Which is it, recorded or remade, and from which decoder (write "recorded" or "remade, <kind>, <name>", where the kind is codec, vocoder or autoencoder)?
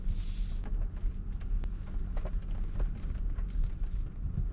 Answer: recorded